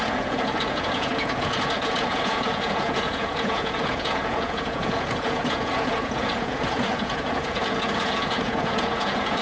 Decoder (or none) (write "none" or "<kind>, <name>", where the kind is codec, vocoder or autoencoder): vocoder, Vocos